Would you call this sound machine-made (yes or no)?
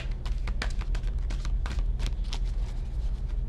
no